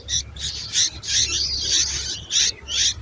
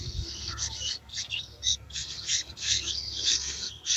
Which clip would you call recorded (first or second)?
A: first